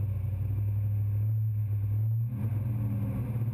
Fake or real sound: real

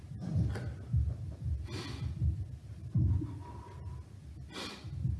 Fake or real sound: real